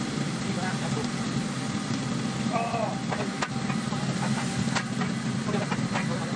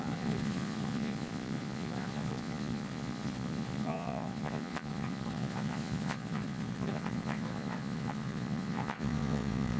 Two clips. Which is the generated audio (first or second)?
second